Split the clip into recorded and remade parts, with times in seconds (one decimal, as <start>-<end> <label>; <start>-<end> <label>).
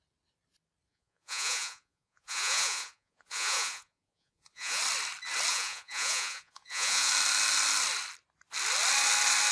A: 0.0-0.9 recorded; 0.9-4.8 remade; 4.8-5.5 recorded; 5.5-7.1 remade; 7.1-9.5 recorded